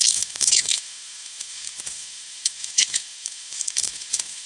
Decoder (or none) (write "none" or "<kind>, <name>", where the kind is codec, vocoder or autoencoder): autoencoder, DAC-VAE